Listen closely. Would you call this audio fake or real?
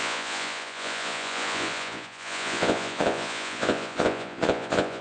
fake